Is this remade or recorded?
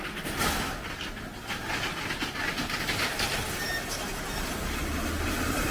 recorded